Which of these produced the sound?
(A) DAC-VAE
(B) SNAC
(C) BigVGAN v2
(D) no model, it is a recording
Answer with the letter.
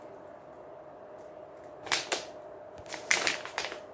C